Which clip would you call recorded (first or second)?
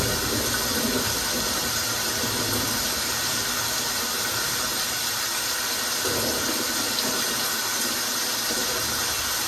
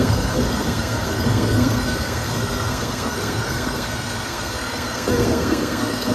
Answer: first